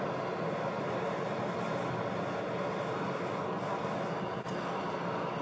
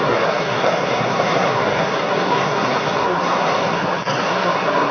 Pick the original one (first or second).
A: first